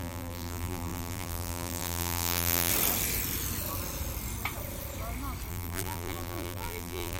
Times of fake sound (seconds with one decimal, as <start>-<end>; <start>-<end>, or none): 0.0-2.7; 5.5-7.2